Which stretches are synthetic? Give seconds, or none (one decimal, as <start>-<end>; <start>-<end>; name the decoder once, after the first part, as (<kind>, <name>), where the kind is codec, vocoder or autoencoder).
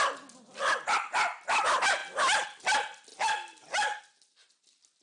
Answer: 3.1-4.0 (vocoder, BigVGAN v2)